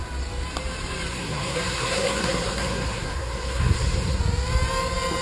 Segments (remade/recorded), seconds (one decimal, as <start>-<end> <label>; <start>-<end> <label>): 0.0-1.1 recorded; 1.1-4.2 remade; 4.2-5.2 recorded